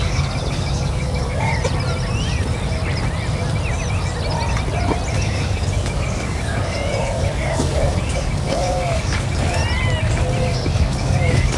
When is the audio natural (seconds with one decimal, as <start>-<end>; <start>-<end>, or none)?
1.5-5.1; 9.6-10.4

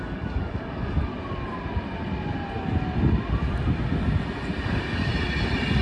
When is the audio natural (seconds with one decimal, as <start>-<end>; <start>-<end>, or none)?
1.1-4.6; 5.1-5.8

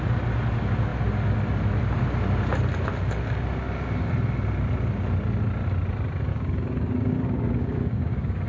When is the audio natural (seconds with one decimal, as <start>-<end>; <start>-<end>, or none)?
0.0-6.3

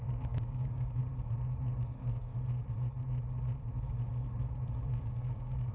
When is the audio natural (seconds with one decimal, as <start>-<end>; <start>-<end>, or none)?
1.0-1.8; 2.3-4.8

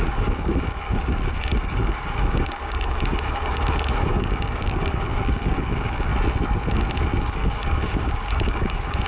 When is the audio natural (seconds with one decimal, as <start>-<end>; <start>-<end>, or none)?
6.1-7.2

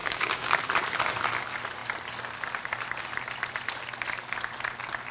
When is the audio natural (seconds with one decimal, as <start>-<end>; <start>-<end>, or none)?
0.6-5.1

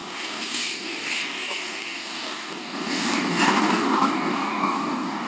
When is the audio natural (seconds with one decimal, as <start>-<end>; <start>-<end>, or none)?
none